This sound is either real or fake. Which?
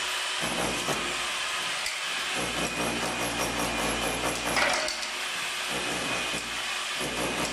real